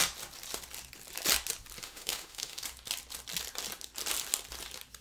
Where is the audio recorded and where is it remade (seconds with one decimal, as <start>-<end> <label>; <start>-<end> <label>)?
0.0-1.8 recorded; 1.8-2.6 remade; 2.6-5.0 recorded